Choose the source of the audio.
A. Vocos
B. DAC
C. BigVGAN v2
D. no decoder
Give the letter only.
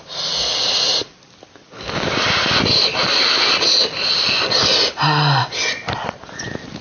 D